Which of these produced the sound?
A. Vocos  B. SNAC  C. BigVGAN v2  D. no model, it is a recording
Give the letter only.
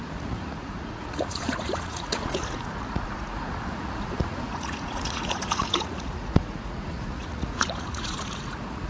A